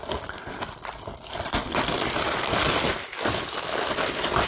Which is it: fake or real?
real